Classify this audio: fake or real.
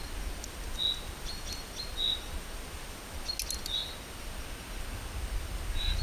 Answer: real